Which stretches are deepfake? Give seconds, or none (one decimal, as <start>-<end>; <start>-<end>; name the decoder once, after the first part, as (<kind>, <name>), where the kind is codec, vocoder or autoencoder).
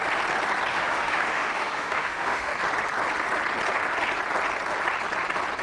0.7-2.5 (autoencoder, DAC-VAE)